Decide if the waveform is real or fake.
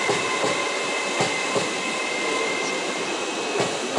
real